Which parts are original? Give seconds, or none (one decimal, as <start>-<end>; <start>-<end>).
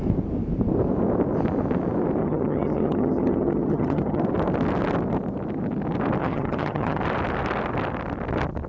0.0-2.2; 4.2-6.2; 7.0-8.7